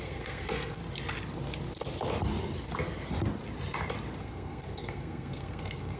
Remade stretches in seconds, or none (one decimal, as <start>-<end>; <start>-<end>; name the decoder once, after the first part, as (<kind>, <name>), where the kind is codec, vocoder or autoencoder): 0.0-0.8 (codec, SNAC); 4.2-6.0